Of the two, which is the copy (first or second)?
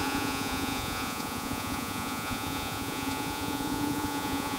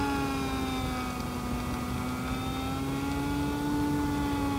first